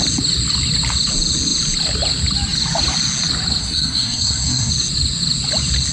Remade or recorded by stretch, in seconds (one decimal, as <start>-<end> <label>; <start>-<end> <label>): 0.0-3.6 recorded; 3.6-4.7 remade; 4.7-5.9 recorded